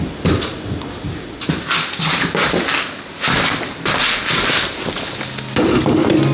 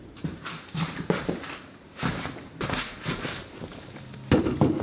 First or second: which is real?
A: first